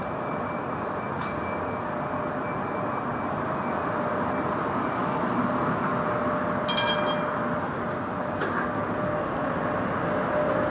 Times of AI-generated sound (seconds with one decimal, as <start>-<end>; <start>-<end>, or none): none